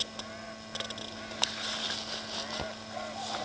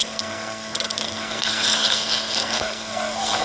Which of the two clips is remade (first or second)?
second